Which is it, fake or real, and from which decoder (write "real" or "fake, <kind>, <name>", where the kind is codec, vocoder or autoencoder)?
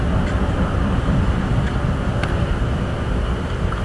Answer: fake, vocoder, BigVGAN v2